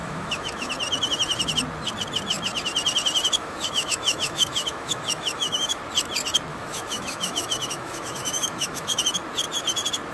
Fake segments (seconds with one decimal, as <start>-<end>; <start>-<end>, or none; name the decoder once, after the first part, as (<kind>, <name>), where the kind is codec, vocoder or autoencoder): 0.0-0.7 (autoencoder, DAC-VAE); 3.4-5.8; 6.5-9.0